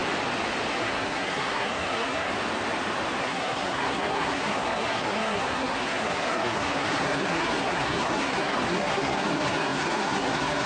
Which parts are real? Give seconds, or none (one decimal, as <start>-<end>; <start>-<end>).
0.0-0.7; 2.3-3.2